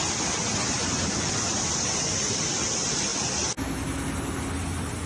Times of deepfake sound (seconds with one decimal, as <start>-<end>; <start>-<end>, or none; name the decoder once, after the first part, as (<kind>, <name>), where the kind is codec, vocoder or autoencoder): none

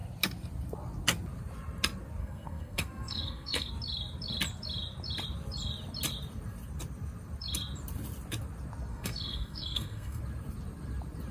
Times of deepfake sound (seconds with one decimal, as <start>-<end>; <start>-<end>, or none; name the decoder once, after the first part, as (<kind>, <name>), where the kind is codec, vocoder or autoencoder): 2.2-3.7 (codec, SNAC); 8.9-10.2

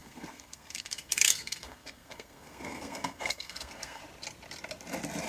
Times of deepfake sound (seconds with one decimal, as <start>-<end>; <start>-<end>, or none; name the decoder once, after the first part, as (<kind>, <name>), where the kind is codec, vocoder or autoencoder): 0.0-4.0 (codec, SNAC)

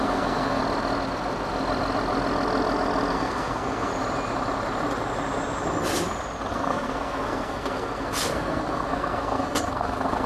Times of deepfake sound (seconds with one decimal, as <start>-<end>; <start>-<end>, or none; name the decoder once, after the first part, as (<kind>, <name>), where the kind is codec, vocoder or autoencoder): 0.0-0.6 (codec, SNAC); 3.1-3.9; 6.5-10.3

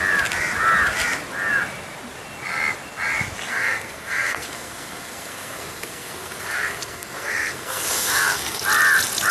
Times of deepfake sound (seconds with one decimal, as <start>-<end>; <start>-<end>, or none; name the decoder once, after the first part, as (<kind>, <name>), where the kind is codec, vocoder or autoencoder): 3.5-8.6 (codec, SNAC)